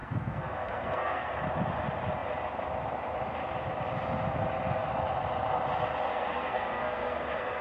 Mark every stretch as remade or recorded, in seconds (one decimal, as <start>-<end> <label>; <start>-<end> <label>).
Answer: 0.0-1.3 remade; 1.3-6.1 recorded; 6.1-7.6 remade